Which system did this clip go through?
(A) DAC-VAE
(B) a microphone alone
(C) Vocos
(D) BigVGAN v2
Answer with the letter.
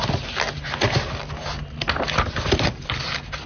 B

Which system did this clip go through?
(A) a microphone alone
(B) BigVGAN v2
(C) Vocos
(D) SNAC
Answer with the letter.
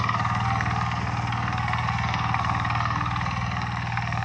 D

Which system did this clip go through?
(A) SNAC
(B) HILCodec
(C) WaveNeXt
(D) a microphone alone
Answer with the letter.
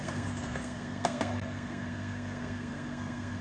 A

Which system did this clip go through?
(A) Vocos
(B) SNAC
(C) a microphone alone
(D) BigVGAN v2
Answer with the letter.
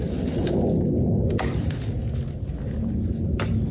C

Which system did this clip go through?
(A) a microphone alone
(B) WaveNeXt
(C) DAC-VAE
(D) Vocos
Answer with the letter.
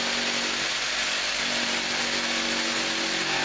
A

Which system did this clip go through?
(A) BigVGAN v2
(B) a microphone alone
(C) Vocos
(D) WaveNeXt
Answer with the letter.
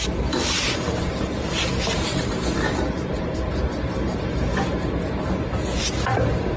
A